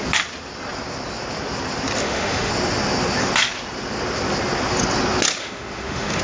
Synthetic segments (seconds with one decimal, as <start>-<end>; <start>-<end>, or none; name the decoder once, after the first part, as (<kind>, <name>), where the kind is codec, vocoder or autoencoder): 2.0-2.5 (autoencoder, DAC-VAE); 5.4-6.2